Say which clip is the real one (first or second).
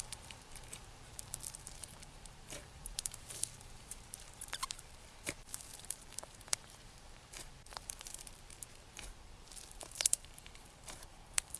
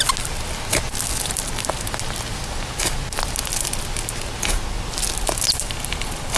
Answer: second